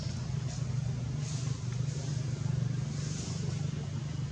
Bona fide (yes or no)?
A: yes